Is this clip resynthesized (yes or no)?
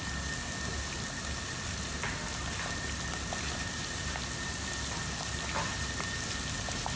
no